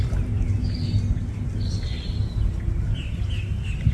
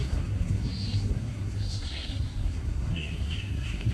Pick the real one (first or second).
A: first